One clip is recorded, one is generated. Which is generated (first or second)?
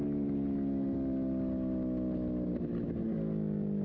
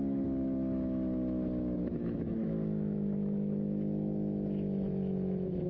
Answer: second